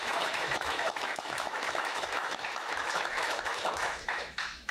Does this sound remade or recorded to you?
remade